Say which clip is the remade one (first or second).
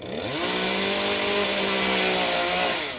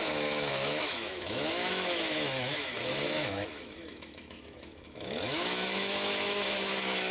second